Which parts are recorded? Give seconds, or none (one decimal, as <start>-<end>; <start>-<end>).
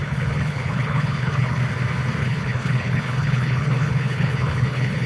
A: 1.6-2.2